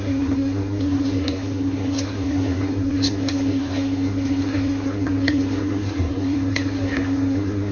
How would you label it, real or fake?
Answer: fake